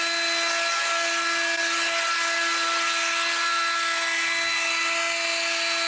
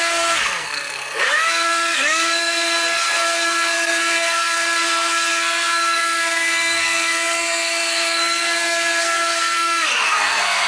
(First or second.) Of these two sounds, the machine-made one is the second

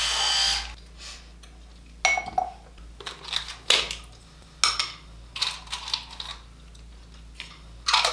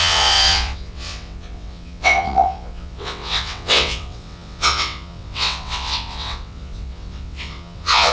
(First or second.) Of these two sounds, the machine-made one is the second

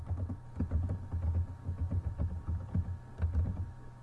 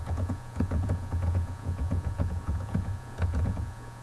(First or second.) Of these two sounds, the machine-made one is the second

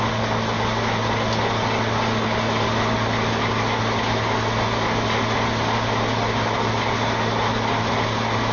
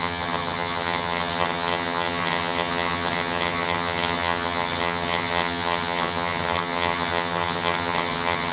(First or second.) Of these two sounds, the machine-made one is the second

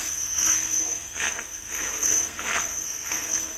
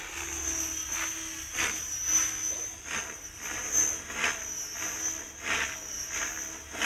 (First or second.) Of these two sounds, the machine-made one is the first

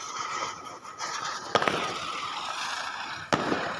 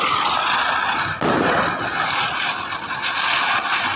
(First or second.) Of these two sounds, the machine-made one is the first